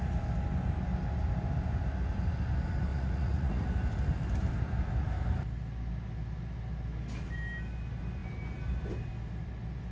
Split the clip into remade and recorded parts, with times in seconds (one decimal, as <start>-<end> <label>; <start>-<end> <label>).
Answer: 0.0-2.9 recorded; 2.9-3.7 remade; 3.7-9.9 recorded